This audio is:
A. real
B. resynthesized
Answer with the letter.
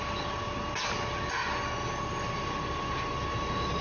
A